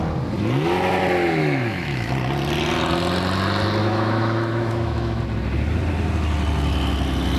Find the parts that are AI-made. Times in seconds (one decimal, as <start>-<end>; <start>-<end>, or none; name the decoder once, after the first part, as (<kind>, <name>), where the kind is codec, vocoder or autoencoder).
1.4-2.1 (autoencoder, DAC-VAE); 3.8-5.2